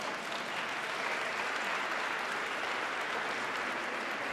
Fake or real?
real